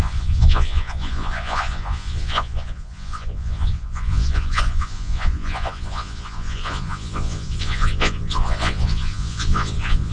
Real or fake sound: fake